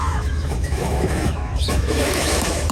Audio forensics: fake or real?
fake